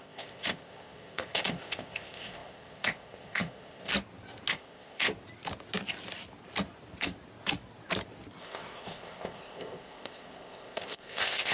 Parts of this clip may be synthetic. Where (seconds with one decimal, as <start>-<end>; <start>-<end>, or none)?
0.0-3.9; 4.5-5.1; 8.4-11.5

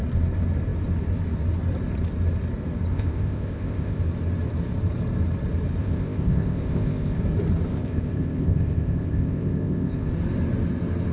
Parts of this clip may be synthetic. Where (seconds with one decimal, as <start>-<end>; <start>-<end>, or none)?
2.9-4.0; 5.8-7.2; 7.7-10.1

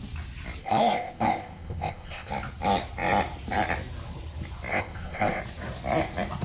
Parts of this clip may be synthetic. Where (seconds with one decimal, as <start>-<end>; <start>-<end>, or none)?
0.6-2.3; 4.7-5.4

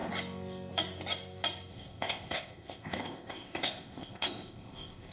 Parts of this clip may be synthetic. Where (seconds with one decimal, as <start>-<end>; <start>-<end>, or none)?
1.7-5.1

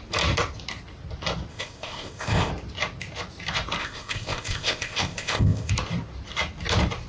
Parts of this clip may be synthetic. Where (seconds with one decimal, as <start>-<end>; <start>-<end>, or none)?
1.5-2.5; 3.8-5.7

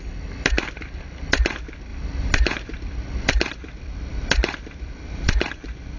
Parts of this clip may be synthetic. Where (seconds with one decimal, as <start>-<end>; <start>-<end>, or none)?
none

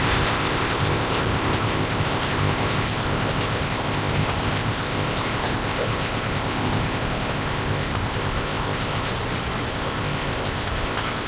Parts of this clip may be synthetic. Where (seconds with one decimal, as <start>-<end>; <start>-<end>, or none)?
0.0-9.1; 9.7-11.3

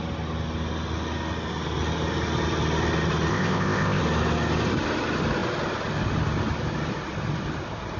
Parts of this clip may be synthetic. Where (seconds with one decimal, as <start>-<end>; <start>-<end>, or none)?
3.3-4.0